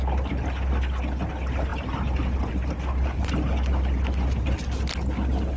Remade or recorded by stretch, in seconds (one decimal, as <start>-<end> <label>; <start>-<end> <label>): 0.0-5.6 recorded